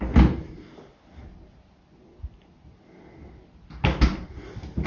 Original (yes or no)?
yes